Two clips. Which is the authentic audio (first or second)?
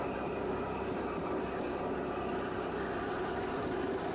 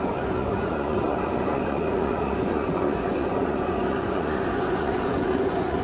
first